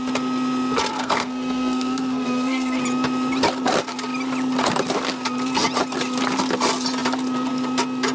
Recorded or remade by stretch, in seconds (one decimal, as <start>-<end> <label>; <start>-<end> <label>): 0.0-0.9 recorded; 0.9-2.8 remade; 2.8-8.1 recorded